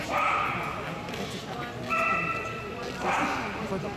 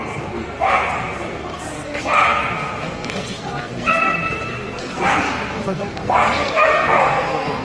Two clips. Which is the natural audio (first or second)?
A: first